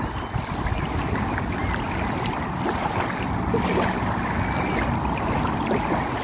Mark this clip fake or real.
real